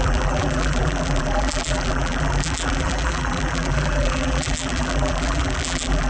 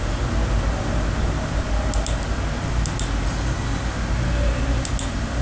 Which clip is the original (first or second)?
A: second